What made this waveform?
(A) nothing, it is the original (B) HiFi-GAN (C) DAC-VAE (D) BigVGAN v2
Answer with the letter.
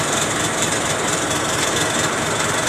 D